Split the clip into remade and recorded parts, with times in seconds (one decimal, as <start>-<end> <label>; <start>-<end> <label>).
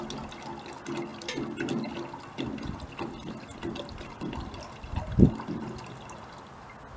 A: 0.0-7.0 recorded